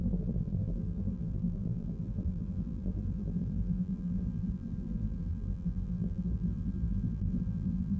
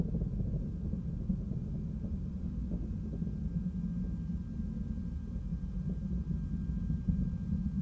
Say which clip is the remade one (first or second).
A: first